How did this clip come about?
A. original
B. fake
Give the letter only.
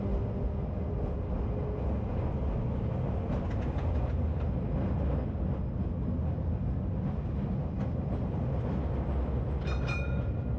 A